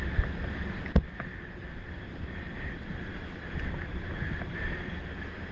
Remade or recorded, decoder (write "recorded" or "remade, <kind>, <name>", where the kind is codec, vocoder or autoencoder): recorded